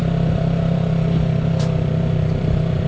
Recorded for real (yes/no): no